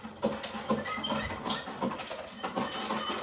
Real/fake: real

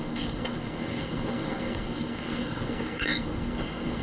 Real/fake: fake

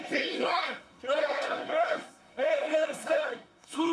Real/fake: fake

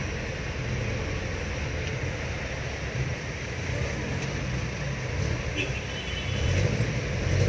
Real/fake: real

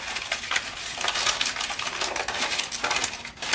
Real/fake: real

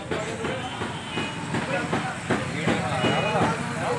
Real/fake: real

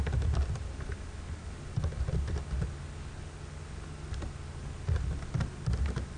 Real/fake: real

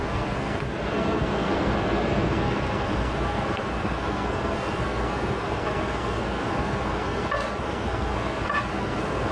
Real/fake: fake